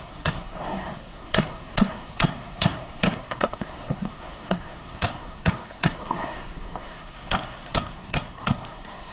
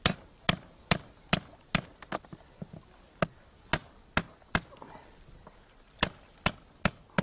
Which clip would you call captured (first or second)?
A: second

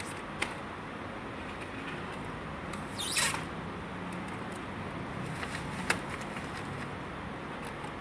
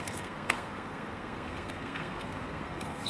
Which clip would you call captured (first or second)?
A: first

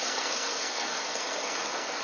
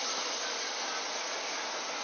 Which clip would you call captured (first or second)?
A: second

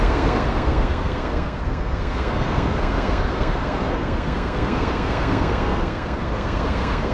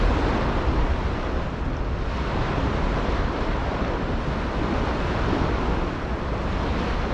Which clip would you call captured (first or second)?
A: second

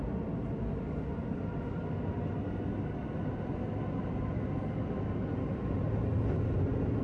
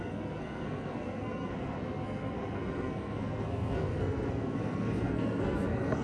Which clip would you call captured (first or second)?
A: first